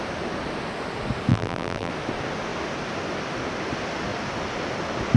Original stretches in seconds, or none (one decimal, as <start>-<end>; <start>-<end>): 0.0-1.3; 1.9-5.2